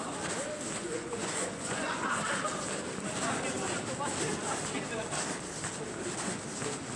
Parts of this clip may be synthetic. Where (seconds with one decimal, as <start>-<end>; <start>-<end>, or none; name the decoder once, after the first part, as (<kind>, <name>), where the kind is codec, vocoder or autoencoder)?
0.8-2.2 (vocoder, Vocos)